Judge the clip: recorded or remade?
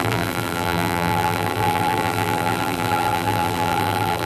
remade